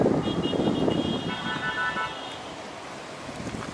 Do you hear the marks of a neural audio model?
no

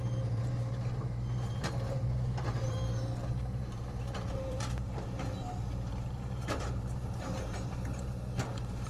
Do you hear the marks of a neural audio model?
yes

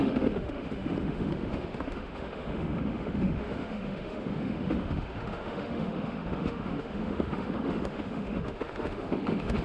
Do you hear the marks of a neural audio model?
yes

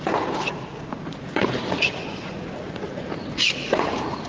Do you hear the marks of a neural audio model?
yes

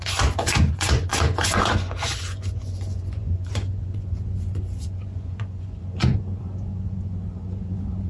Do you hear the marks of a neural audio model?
yes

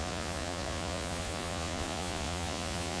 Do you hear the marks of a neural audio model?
yes